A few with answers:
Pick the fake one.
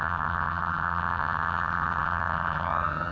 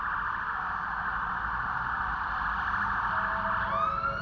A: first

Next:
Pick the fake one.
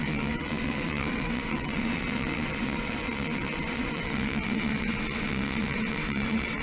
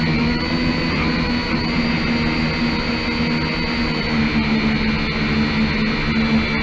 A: first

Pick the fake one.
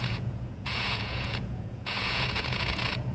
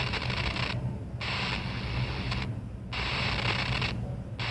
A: first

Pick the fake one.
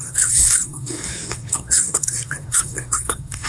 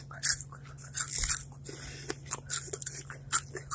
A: first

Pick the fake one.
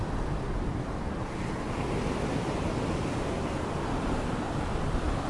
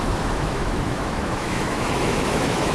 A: second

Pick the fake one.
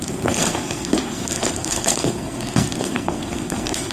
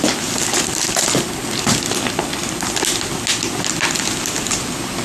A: first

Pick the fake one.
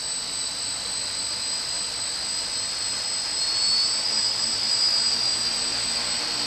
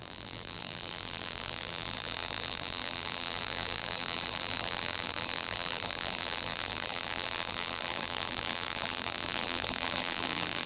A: second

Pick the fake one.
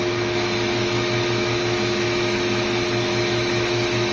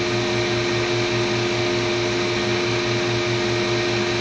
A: first